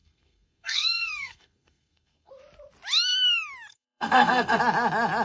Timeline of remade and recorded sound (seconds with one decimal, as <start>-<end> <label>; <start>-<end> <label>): 0.0-2.3 remade; 2.3-3.7 recorded; 3.7-4.6 remade; 4.6-5.2 recorded